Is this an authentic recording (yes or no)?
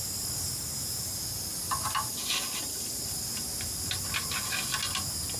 yes